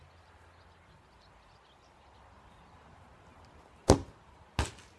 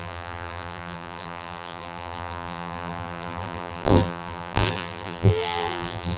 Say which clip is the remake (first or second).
second